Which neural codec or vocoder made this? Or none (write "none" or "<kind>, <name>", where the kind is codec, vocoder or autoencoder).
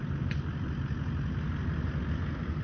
none